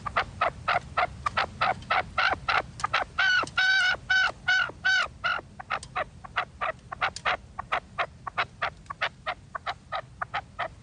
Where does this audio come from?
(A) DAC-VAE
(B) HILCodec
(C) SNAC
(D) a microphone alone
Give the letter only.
D